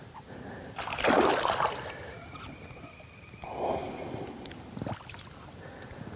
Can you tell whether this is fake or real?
real